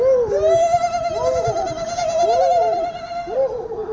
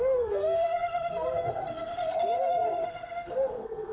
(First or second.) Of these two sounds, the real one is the first